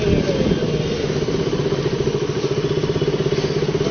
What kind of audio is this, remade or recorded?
recorded